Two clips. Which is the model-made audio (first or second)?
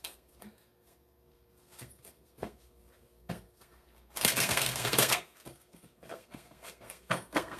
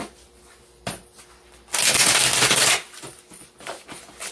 first